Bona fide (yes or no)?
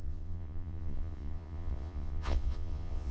no